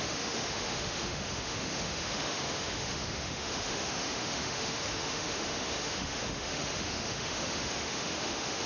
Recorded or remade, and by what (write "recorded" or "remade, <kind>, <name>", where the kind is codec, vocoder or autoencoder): remade, autoencoder, DAC-VAE